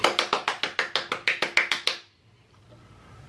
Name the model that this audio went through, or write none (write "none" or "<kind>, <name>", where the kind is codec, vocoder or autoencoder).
none